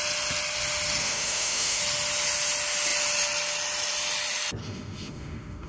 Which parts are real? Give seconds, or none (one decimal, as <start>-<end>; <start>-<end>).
0.0-1.0; 1.8-4.6